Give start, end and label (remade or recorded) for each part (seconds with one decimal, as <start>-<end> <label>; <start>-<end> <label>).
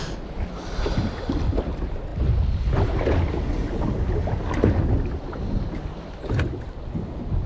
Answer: 0.0-7.5 recorded